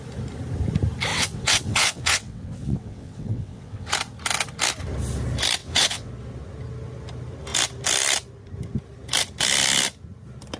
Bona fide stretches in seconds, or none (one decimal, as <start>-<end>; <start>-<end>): 0.0-1.1; 3.9-5.6; 6.1-10.6